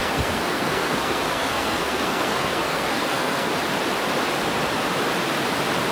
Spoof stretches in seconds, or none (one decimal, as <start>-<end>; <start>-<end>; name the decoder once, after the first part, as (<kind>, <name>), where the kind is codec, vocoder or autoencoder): 0.0-3.5 (codec, SNAC)